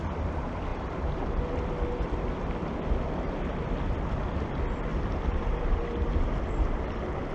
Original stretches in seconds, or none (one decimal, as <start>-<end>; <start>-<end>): 0.0-0.7; 1.4-4.9; 5.6-7.3